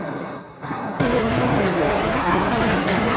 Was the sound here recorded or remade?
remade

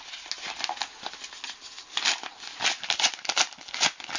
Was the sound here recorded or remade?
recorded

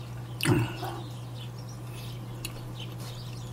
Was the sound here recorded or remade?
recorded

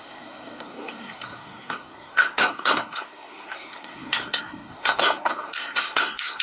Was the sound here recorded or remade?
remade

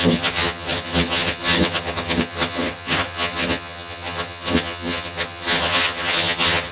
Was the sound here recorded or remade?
remade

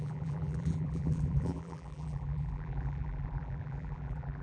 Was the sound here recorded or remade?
remade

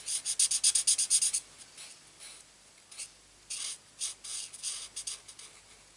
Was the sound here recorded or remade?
recorded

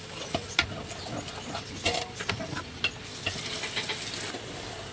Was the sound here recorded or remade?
recorded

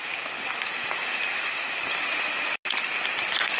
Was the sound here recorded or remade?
recorded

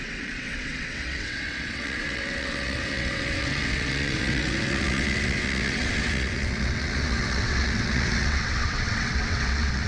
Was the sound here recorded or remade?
remade